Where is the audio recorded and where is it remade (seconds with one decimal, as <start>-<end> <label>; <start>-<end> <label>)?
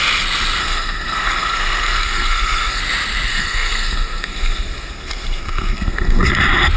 0.0-0.6 recorded; 0.6-2.8 remade; 2.8-3.3 recorded; 3.3-6.3 remade; 6.3-6.8 recorded